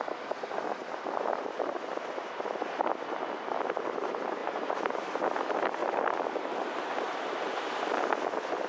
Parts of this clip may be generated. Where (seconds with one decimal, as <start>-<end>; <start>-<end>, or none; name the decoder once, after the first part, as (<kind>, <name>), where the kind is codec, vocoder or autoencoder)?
0.8-1.6 (vocoder, BigVGAN v2); 4.4-5.2